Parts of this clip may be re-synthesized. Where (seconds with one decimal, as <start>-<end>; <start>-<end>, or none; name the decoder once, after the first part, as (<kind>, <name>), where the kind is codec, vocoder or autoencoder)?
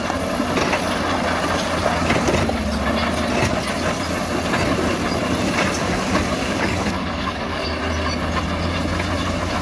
6.4-7.6 (codec, DAC)